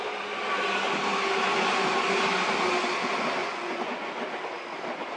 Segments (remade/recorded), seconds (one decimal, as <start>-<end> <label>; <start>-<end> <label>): 0.0-3.4 recorded; 3.4-3.9 remade; 3.9-5.2 recorded